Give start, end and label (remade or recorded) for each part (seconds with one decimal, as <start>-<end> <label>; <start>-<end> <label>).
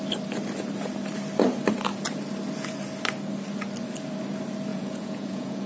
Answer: 0.0-4.7 recorded; 4.7-5.7 remade